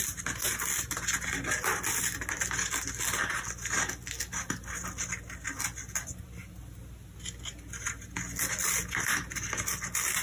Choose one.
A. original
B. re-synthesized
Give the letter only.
A